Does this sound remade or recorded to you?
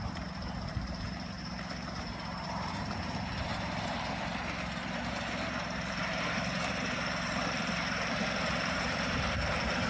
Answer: remade